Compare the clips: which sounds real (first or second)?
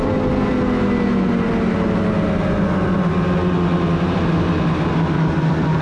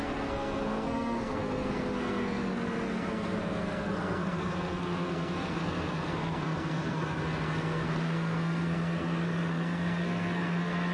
first